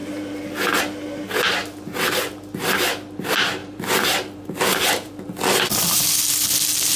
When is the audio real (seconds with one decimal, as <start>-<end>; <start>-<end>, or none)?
0.8-3.6; 5.3-7.0